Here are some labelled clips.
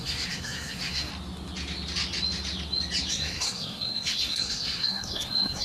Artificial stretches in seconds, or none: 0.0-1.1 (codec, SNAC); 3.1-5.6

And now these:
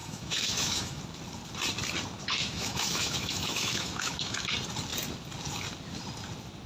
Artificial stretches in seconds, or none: 0.0-1.0 (autoencoder, DAC-VAE); 2.4-4.5

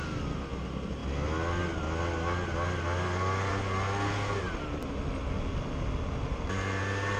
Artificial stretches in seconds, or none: none

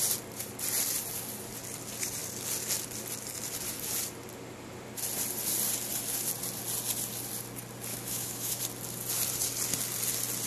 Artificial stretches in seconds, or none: 7.9-8.6 (autoencoder, DAC-VAE)

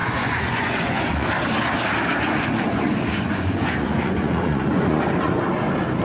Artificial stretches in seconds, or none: 0.0-1.3 (vocoder, Vocos); 2.1-5.4

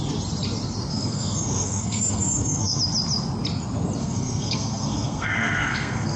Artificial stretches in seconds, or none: 0.9-2.8 (codec, SNAC); 4.0-6.2